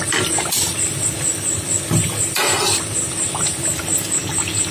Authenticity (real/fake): real